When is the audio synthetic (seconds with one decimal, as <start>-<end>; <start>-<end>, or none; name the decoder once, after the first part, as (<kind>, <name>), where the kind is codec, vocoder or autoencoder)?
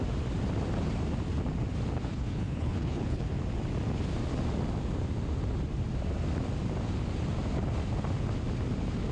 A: 2.1-3.3 (codec, HILCodec)